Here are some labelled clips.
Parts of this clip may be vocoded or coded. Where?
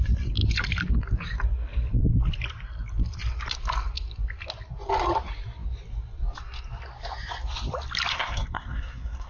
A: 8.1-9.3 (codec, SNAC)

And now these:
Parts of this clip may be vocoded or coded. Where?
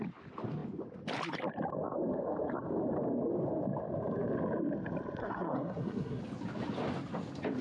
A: 5.2-6.2 (codec, SNAC)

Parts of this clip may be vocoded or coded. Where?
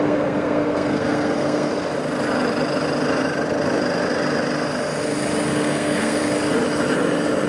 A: 0.0-1.7 (codec, SNAC); 5.5-6.2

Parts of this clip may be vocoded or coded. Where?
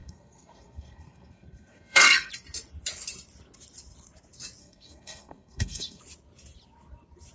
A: 0.0-2.3 (codec, SNAC); 4.6-6.0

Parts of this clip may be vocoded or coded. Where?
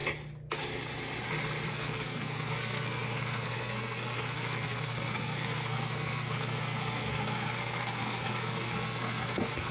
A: 1.7-9.7 (codec, SNAC)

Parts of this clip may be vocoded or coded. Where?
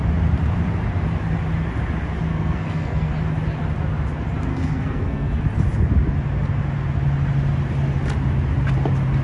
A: 2.3-3.1 (codec, SNAC); 4.5-5.4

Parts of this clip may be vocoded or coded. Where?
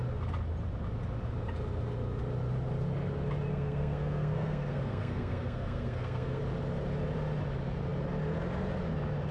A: 3.5-6.4 (codec, SNAC)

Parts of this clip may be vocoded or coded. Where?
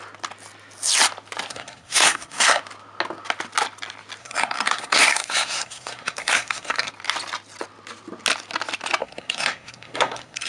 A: 1.5-2.6 (codec, SNAC); 4.2-6.9; 9.0-10.5